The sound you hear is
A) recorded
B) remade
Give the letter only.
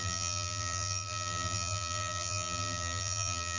B